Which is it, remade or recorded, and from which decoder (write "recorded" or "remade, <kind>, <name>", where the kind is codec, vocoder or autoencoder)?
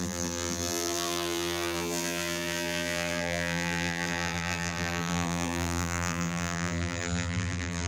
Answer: remade, vocoder, BigVGAN v2